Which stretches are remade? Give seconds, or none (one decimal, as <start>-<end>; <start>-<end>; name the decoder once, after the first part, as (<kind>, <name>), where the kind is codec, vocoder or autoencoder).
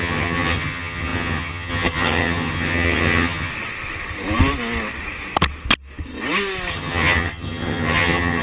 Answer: 0.0-3.5 (vocoder, HiFi-GAN); 6.7-8.4